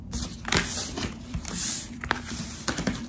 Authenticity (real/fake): fake